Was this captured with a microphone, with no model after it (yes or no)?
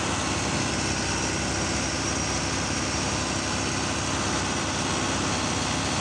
yes